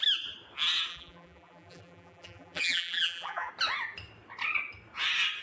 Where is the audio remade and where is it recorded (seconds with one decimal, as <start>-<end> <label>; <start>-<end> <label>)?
0.0-0.9 recorded; 0.9-3.5 remade; 3.5-5.4 recorded